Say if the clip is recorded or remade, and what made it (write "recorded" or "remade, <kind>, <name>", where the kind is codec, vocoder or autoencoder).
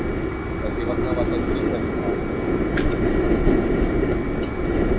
recorded